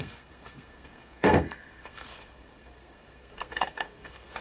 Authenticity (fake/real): fake